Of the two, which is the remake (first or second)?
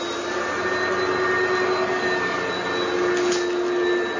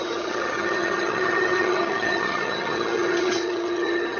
second